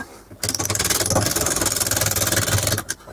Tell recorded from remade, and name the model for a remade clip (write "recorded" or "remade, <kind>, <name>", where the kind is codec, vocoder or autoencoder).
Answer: recorded